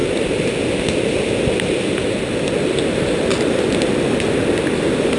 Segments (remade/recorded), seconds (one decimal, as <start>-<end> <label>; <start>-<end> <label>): 0.0-5.2 recorded

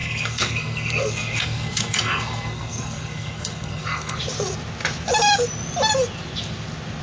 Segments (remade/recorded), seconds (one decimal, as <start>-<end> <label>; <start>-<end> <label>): 0.0-4.2 remade; 4.2-7.0 recorded

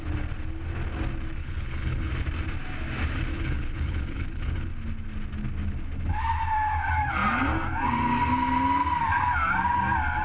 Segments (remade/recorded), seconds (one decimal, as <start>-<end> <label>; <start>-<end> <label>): 0.0-1.4 recorded; 1.4-2.1 remade; 2.1-3.3 recorded; 3.3-4.7 remade; 4.7-10.2 recorded

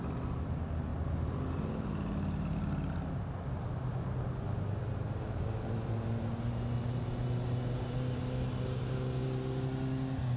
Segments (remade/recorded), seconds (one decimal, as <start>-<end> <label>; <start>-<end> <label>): 0.0-10.4 recorded

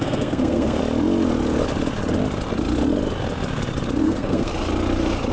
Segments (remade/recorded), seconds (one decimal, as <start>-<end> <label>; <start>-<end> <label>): 0.0-0.8 remade; 0.8-4.0 recorded; 4.0-4.5 remade; 4.5-5.3 recorded

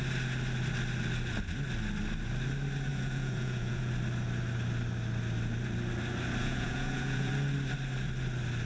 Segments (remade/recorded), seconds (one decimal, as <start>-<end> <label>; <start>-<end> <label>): 0.0-2.9 recorded; 2.9-3.9 remade; 3.9-6.4 recorded; 6.4-7.3 remade; 7.3-8.7 recorded

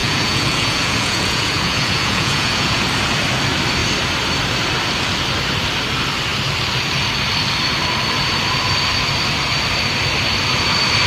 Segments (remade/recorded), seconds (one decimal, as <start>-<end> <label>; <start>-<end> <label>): 0.0-2.8 remade; 2.8-11.1 recorded